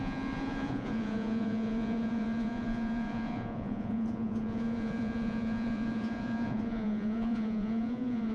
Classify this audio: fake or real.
fake